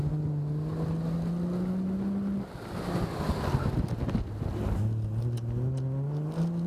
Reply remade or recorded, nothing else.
recorded